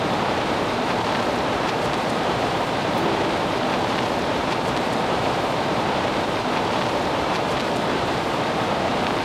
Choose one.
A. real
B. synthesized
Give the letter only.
B